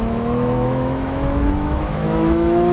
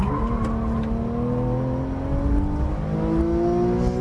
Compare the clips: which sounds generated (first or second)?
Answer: first